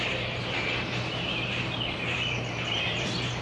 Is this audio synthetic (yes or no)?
yes